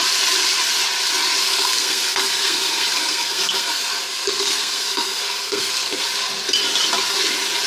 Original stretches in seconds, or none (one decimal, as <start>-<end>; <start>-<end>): 0.0-1.4; 6.0-7.7